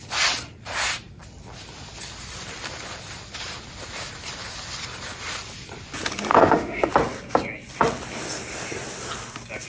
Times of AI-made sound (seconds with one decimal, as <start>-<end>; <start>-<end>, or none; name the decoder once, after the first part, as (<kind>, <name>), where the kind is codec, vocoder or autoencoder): 6.3-6.9 (autoencoder, DAC-VAE)